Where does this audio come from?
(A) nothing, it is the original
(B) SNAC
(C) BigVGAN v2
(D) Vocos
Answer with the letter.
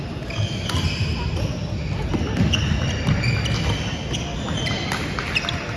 A